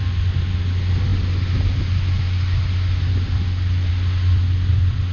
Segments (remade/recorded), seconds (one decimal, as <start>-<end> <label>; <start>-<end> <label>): 0.0-5.1 recorded